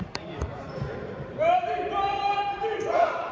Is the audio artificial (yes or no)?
yes